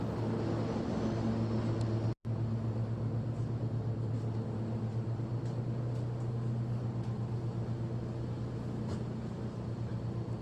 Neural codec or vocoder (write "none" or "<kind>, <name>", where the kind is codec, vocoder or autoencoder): none